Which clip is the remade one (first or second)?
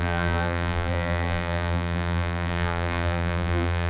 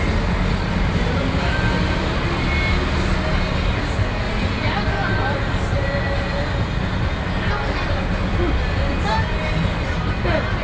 first